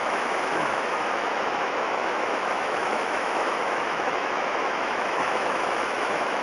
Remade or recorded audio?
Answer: remade